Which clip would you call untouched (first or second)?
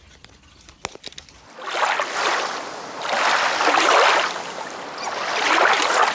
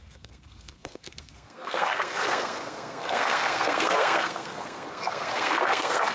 first